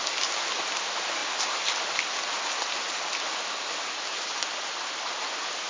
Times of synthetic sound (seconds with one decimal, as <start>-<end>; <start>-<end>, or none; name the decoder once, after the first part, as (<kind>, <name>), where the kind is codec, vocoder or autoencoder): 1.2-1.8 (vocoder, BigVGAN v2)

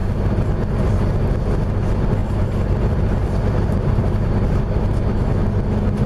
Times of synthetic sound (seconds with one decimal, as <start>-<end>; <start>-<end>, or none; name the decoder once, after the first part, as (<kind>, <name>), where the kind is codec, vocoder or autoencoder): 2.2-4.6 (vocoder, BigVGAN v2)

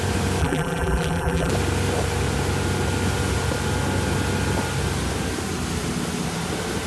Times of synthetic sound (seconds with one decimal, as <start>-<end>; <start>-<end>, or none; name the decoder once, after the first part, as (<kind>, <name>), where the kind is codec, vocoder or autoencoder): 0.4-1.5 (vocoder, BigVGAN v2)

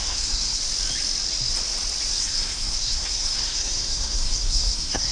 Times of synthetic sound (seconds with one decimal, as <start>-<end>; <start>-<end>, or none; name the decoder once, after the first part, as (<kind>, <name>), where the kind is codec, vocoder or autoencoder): 0.0-0.6 (codec, SNAC); 2.2-5.1

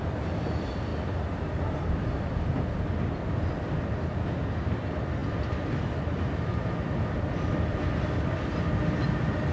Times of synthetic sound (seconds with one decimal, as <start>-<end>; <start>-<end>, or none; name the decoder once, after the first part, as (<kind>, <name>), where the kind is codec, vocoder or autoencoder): none